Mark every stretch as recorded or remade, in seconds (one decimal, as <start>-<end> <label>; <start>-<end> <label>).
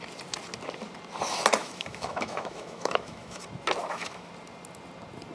0.0-1.6 recorded; 1.6-3.4 remade; 3.4-3.8 recorded; 3.8-4.3 remade; 4.3-5.3 recorded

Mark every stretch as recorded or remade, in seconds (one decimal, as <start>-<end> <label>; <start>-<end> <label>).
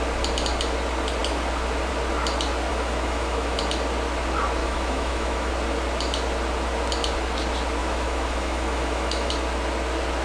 0.0-2.7 recorded; 2.7-3.6 remade; 3.6-4.6 recorded; 4.6-5.5 remade; 5.5-7.8 recorded; 7.8-9.3 remade; 9.3-10.2 recorded